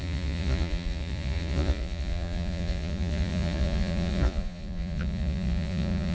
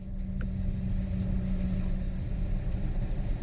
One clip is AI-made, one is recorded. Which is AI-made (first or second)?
first